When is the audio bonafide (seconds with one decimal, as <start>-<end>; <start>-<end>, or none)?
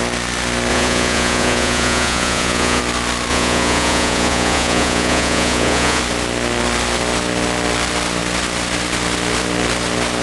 0.0-0.7; 2.8-3.3; 6.0-10.2